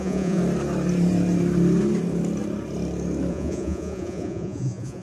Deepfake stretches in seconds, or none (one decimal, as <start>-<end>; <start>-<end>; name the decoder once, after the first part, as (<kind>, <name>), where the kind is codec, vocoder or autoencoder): 0.0-0.4 (vocoder, Vocos); 3.3-5.0